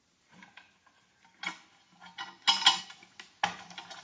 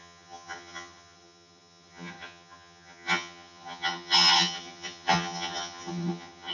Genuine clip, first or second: first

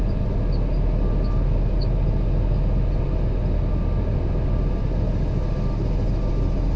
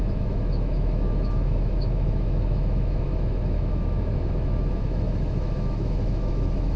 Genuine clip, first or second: first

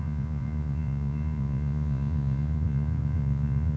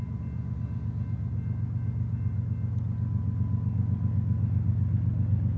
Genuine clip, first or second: second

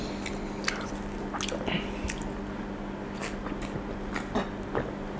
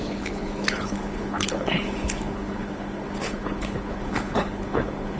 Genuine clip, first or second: first